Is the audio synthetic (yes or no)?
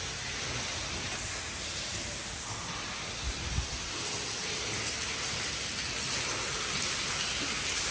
no